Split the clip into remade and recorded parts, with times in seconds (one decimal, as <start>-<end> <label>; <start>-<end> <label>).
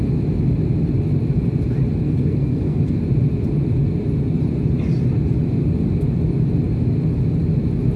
0.0-2.0 recorded; 2.0-3.0 remade; 3.0-8.0 recorded